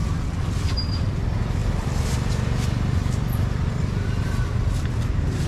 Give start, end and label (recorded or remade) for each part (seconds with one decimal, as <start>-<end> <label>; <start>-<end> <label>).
0.0-5.5 recorded